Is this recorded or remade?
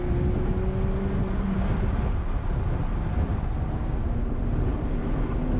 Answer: recorded